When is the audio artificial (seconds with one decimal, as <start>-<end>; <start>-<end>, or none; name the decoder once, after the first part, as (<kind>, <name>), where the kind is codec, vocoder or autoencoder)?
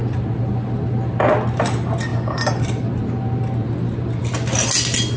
none